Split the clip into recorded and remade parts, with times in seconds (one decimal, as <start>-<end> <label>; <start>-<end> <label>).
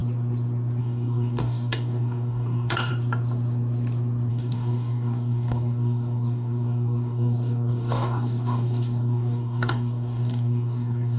0.0-0.8 recorded; 0.8-2.9 remade; 2.9-4.3 recorded; 4.3-11.2 remade